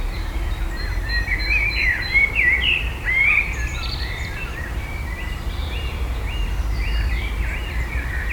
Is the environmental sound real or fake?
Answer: fake